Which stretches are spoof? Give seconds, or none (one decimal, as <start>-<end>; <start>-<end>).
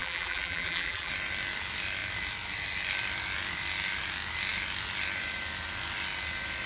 0.0-1.1